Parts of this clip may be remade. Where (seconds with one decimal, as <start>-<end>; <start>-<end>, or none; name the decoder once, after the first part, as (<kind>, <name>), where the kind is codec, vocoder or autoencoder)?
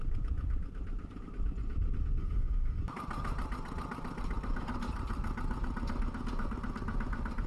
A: 2.2-2.8 (autoencoder, DAC-VAE)